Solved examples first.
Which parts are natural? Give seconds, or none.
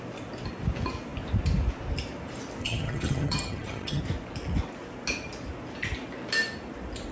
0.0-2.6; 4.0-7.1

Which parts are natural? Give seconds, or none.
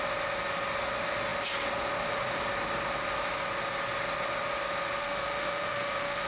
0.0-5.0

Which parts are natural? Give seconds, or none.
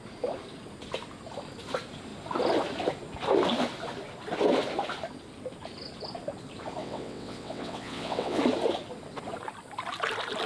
0.0-6.8; 8.4-10.5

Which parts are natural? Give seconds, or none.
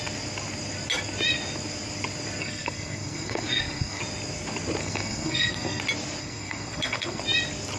0.0-2.4; 4.0-4.8; 5.8-6.2; 7.2-7.8